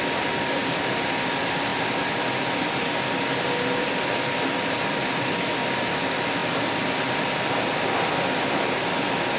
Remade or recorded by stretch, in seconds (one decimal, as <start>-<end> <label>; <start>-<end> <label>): 0.0-9.4 recorded